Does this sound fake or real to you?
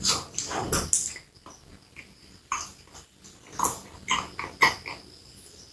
real